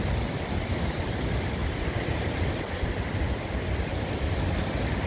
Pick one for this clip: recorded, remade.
recorded